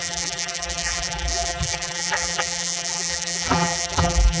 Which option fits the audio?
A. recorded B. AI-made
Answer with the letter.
B